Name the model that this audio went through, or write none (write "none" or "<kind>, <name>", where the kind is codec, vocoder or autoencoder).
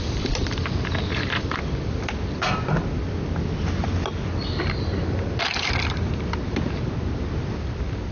none